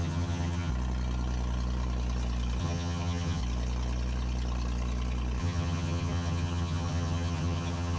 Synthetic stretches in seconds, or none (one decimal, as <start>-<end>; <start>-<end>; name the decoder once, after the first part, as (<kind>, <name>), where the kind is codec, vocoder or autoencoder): 0.0-0.7 (vocoder, HiFi-GAN); 2.6-3.4; 5.4-8.0